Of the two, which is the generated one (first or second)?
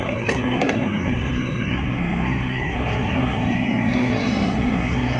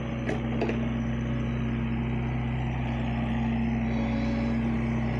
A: first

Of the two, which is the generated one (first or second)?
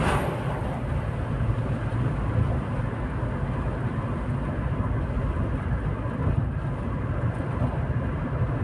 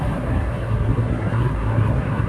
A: second